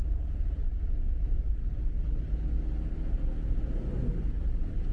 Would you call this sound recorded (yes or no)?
yes